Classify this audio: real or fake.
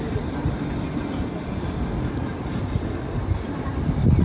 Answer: real